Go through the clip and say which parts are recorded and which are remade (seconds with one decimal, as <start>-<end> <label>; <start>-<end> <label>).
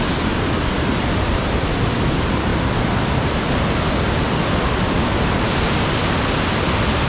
0.0-7.1 recorded